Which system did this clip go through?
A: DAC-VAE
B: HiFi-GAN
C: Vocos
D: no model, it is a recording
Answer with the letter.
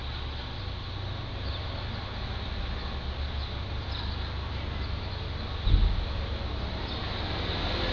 D